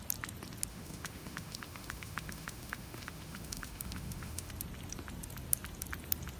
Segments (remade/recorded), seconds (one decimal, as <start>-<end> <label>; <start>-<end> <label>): 0.0-0.7 recorded; 0.7-4.5 remade; 4.5-6.4 recorded